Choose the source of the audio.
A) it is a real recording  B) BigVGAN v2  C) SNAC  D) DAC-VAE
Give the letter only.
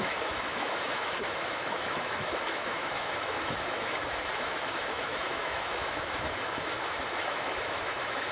D